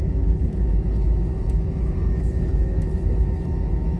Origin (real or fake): fake